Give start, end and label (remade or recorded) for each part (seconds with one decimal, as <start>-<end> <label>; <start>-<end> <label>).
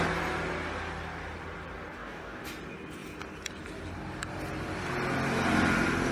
0.0-1.9 recorded; 1.9-2.4 remade; 2.4-6.1 recorded